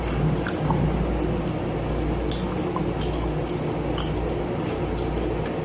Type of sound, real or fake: real